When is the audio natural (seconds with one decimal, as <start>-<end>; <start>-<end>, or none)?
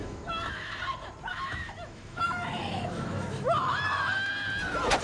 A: 0.8-1.3; 4.3-5.0